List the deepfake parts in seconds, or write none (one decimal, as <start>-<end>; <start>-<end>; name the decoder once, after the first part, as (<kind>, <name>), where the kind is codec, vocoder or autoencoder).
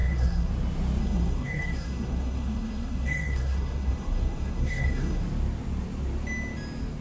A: 0.0-0.5 (codec, SNAC); 1.0-5.2